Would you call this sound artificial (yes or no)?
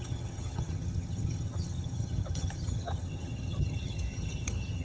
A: yes